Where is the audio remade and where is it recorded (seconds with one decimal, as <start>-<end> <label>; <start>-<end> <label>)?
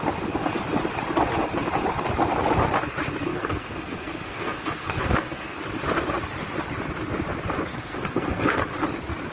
0.0-3.3 recorded; 3.3-5.6 remade; 5.6-7.7 recorded; 7.7-8.6 remade; 8.6-9.3 recorded